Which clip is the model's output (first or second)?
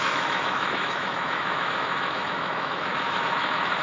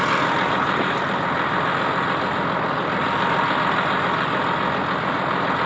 first